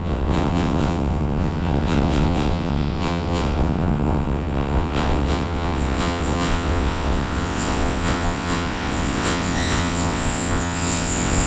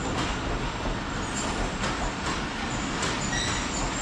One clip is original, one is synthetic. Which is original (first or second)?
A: second